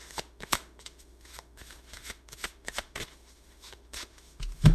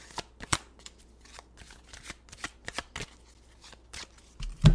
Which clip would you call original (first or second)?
second